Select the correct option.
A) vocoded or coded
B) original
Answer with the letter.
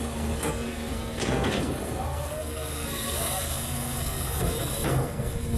A